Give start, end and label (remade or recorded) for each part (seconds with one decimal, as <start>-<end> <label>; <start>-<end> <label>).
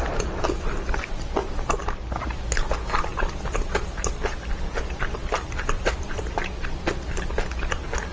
0.0-3.1 recorded; 3.1-4.0 remade; 4.0-5.2 recorded; 5.2-6.1 remade; 6.1-8.1 recorded